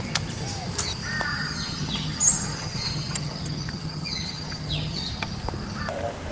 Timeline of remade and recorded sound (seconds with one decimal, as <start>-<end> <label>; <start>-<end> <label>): 0.0-1.3 recorded; 1.3-5.1 remade; 5.1-6.3 recorded